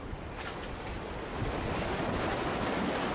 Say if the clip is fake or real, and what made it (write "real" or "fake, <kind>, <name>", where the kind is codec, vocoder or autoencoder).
real